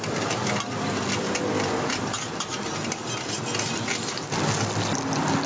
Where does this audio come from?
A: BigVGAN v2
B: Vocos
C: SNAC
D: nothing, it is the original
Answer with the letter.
D